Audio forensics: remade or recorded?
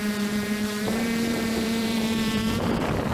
remade